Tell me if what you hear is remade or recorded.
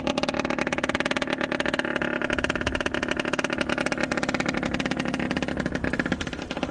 recorded